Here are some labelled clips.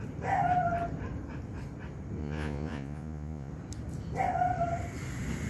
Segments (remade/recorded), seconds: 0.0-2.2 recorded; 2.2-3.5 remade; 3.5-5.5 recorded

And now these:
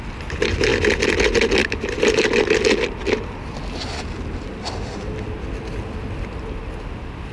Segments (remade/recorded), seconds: 0.0-7.3 recorded

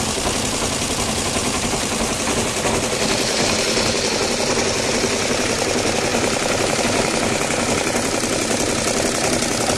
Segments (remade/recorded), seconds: 0.0-1.4 recorded; 1.4-4.1 remade; 4.1-9.8 recorded

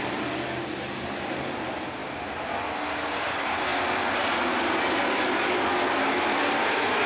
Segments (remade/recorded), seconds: 0.0-7.1 recorded

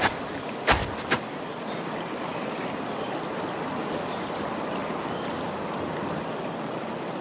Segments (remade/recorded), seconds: 0.0-7.2 recorded

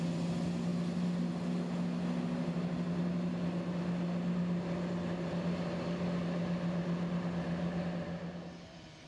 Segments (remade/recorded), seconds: 0.0-9.1 recorded

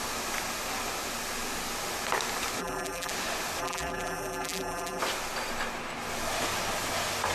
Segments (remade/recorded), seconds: 0.0-2.6 recorded; 2.6-3.1 remade; 3.1-3.6 recorded; 3.6-5.0 remade; 5.0-7.3 recorded

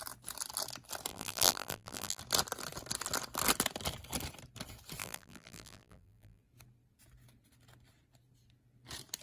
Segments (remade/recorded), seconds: 0.0-1.1 recorded; 1.1-2.2 remade; 2.2-5.0 recorded; 5.0-6.4 remade; 6.4-9.2 recorded